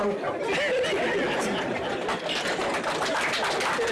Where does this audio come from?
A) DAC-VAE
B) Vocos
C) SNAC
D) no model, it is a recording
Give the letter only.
D